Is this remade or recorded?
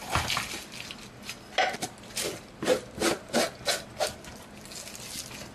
recorded